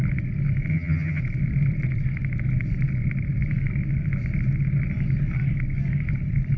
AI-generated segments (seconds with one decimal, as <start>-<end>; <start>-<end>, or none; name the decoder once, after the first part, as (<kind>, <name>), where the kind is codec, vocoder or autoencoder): 0.7-1.2 (vocoder, HiFi-GAN)